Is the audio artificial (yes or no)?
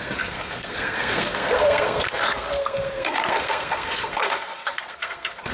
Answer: yes